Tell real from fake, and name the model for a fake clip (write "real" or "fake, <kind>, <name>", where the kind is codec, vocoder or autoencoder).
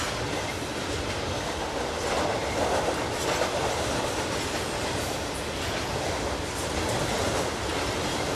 real